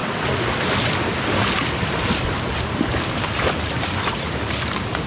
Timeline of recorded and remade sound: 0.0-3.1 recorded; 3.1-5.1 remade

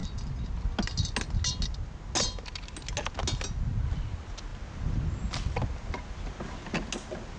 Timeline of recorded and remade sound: 0.0-7.4 recorded

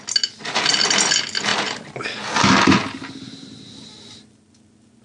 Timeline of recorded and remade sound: 0.0-5.0 recorded